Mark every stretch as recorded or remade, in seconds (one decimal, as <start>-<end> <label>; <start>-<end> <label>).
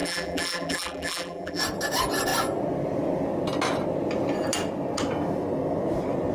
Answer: 0.0-1.6 remade; 1.6-6.3 recorded